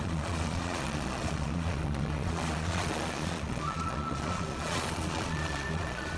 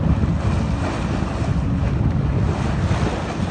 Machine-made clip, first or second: first